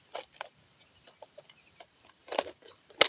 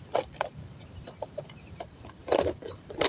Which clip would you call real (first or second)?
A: first